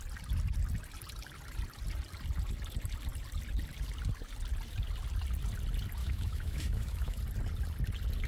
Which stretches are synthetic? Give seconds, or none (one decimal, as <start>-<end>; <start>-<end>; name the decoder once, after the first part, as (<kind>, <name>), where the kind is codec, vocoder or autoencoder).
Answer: 6.0-7.2 (autoencoder, DAC-VAE)